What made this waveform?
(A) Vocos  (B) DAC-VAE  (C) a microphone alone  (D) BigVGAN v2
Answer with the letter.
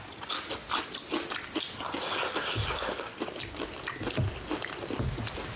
C